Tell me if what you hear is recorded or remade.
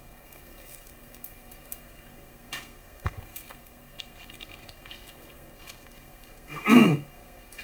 remade